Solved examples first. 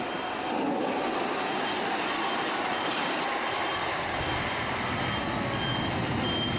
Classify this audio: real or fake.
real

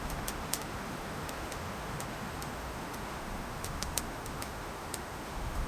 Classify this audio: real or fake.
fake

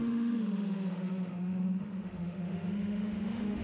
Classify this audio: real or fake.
fake